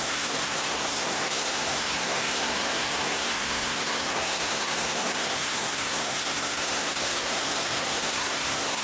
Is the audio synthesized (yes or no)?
yes